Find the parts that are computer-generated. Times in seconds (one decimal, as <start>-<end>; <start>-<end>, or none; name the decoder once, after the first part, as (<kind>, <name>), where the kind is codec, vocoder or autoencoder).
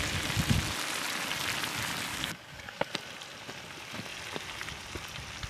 2.1-2.9 (codec, DAC)